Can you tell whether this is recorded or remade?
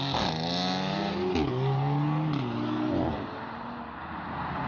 recorded